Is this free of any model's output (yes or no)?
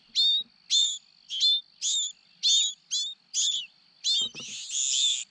yes